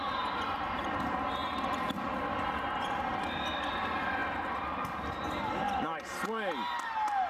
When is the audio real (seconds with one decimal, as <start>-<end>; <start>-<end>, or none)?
0.0-7.3

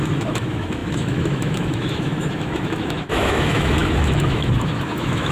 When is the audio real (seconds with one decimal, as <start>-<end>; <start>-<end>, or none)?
none

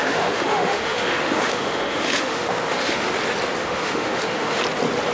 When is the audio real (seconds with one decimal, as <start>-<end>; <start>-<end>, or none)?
3.1-3.6; 4.6-5.1

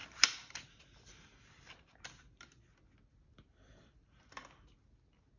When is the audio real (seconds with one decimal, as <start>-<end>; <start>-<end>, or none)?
0.0-5.4